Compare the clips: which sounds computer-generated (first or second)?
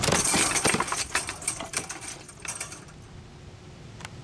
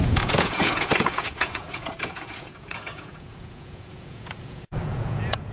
second